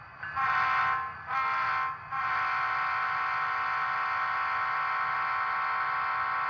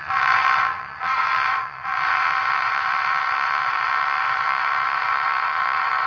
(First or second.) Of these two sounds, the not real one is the second